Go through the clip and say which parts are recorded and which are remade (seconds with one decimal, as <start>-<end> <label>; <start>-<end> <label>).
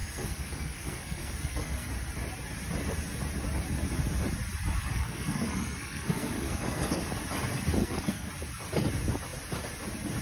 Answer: 0.0-1.9 remade; 1.9-4.8 recorded; 4.8-7.0 remade; 7.0-7.8 recorded; 7.8-8.3 remade; 8.3-10.2 recorded